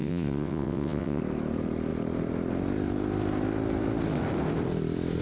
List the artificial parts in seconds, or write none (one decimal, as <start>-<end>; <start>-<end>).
0.0-1.2